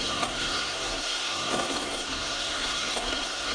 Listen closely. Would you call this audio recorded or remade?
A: remade